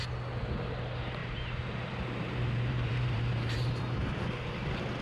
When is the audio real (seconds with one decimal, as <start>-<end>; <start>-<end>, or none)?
0.0-1.2; 4.2-5.0